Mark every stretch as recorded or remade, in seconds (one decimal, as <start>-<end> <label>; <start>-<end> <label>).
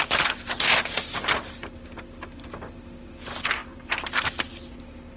0.0-3.6 recorded; 3.6-4.2 remade; 4.2-5.2 recorded